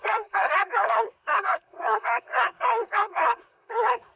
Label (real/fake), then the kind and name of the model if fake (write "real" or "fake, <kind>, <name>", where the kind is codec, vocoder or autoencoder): fake, codec, SNAC